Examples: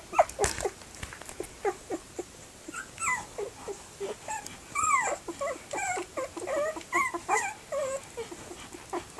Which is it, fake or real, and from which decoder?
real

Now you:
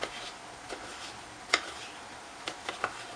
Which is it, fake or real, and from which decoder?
real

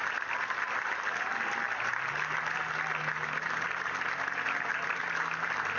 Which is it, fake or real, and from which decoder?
real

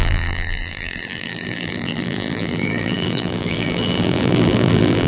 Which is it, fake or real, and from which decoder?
fake, vocoder, BigVGAN v2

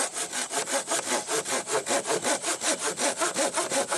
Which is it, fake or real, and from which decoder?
real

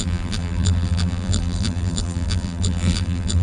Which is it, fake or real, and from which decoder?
fake, vocoder, BigVGAN v2